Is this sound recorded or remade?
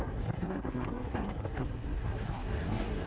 remade